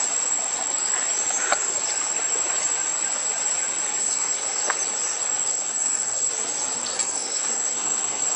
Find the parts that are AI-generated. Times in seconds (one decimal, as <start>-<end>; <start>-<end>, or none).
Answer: 4.0-4.6; 5.5-6.3; 6.9-8.4